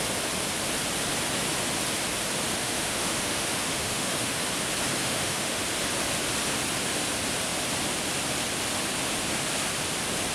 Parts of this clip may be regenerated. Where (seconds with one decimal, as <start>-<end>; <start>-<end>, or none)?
2.6-4.4; 5.0-5.6